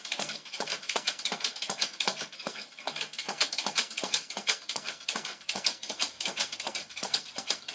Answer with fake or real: fake